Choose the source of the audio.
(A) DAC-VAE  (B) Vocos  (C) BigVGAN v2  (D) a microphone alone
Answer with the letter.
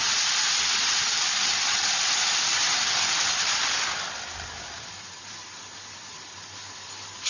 D